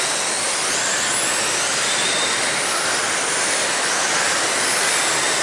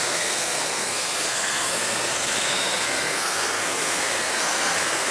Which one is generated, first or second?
second